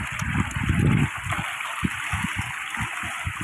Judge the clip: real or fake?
real